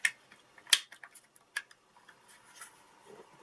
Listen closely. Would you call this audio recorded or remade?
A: recorded